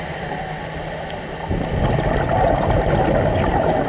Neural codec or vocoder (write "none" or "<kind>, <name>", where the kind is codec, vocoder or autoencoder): none